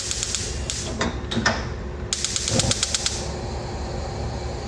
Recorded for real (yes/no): yes